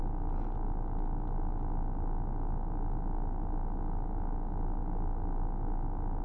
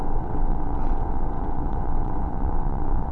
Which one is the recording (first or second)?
first